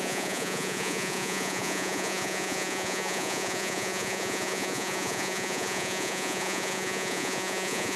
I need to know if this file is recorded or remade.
remade